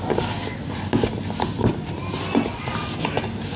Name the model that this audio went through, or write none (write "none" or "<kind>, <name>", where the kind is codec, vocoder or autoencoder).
none